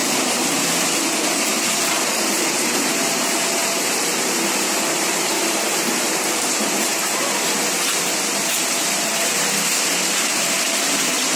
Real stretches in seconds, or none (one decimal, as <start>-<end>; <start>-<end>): none